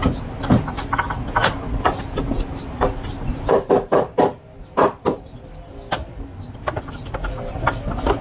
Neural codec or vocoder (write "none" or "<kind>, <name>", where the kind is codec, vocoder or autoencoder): none